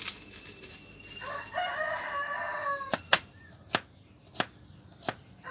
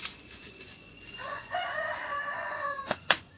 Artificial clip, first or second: second